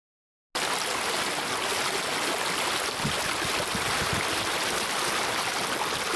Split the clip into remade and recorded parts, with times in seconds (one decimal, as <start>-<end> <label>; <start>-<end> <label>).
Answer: 0.0-6.2 recorded